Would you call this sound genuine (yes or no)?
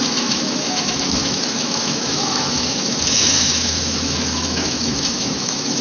no